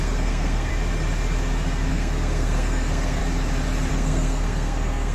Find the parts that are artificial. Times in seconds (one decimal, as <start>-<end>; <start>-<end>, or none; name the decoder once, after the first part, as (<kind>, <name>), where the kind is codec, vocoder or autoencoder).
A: 0.0-0.7 (codec, SNAC); 1.9-3.2; 3.9-5.1